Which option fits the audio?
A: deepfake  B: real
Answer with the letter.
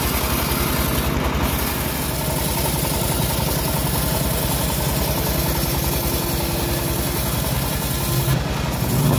B